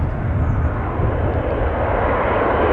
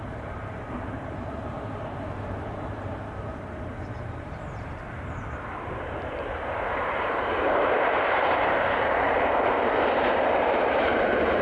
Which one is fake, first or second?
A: second